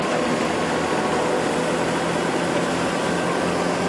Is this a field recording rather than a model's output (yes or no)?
yes